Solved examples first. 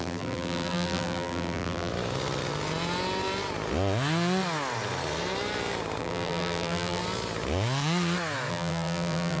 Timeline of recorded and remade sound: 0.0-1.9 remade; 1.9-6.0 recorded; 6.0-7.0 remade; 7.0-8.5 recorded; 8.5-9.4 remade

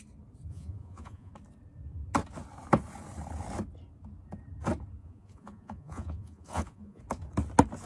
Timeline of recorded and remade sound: 0.0-0.5 recorded; 0.5-1.3 remade; 1.3-5.0 recorded; 5.0-7.0 remade; 7.0-7.9 recorded

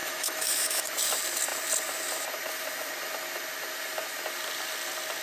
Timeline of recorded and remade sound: 0.0-0.9 remade; 0.9-5.2 recorded

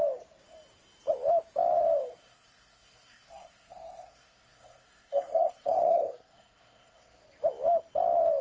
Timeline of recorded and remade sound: 0.0-2.2 recorded; 2.2-7.2 remade; 7.2-8.4 recorded

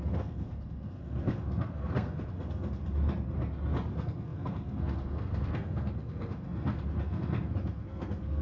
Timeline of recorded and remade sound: 0.0-2.8 remade; 2.8-3.9 recorded; 3.9-8.4 remade